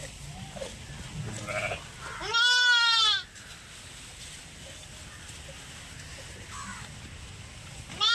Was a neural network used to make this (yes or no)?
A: no